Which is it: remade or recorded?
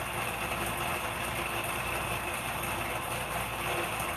recorded